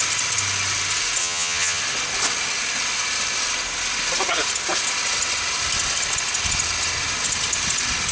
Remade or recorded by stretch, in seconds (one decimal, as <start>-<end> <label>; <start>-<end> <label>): 0.0-1.2 recorded; 1.2-1.8 remade; 1.8-8.1 recorded

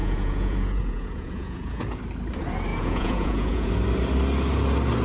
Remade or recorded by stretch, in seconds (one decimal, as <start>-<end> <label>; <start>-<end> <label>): 0.0-2.0 remade; 2.0-2.7 recorded; 2.7-3.7 remade; 3.7-5.0 recorded

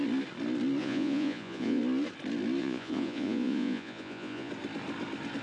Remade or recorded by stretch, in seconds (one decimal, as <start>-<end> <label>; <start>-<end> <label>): 0.0-0.8 recorded; 0.8-1.8 remade; 1.8-2.6 recorded; 2.6-4.5 remade; 4.5-5.4 recorded

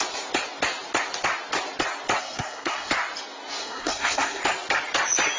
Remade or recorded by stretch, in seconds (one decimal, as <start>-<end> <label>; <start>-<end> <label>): 0.0-2.2 recorded; 2.2-2.9 remade; 2.9-3.6 recorded; 3.6-4.4 remade; 4.4-5.4 recorded

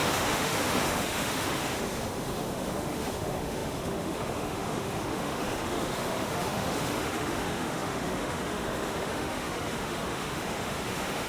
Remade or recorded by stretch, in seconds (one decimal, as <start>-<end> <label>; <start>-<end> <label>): 0.0-11.3 remade